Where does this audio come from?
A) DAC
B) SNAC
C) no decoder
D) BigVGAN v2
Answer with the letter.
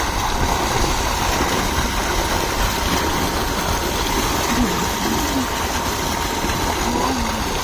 C